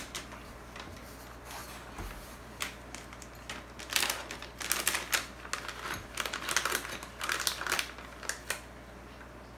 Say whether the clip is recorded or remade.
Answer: recorded